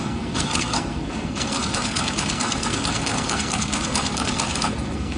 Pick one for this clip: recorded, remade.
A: remade